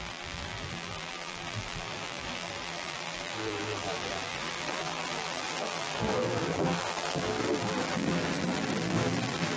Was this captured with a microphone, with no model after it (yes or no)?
no